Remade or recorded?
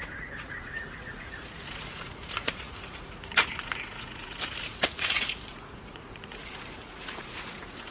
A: remade